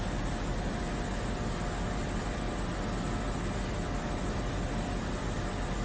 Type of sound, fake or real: real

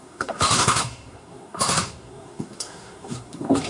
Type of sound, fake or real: fake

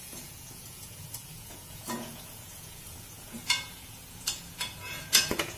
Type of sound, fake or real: fake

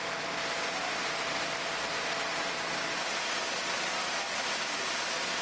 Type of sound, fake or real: real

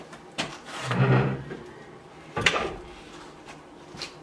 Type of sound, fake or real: fake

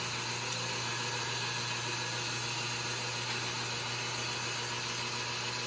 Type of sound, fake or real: real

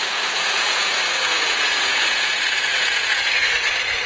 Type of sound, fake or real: fake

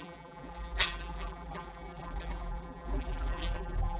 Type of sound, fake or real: fake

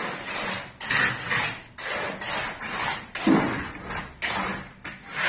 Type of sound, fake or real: real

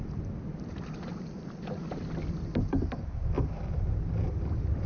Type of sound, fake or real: fake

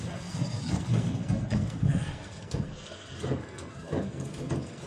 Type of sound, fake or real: fake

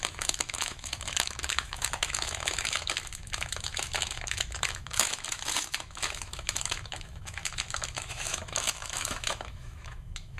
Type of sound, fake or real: fake